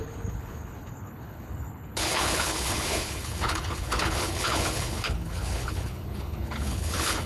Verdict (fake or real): fake